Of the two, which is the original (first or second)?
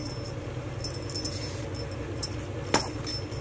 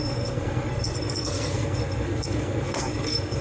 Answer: first